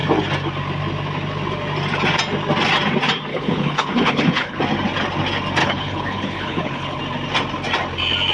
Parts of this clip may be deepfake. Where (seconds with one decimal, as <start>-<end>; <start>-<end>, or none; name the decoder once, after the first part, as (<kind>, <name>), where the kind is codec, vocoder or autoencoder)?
3.3-4.6 (codec, HILCodec); 5.6-7.0